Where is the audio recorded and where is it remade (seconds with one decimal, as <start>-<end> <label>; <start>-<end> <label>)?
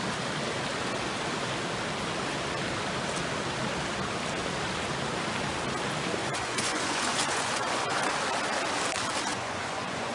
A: 0.0-6.2 recorded; 6.2-8.0 remade; 8.0-9.3 recorded; 9.3-10.1 remade